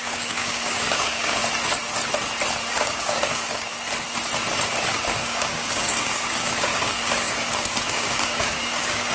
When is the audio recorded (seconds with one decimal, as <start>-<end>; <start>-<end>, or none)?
1.4-2.7; 3.7-4.9